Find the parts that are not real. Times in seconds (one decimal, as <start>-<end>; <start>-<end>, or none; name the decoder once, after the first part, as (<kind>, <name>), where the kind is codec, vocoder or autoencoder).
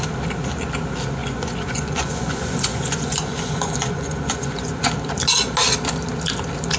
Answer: 1.2-4.9 (vocoder, Vocos)